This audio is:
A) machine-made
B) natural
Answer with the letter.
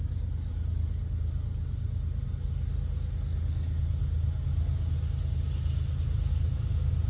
B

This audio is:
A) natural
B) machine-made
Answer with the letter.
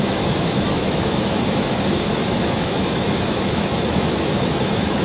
B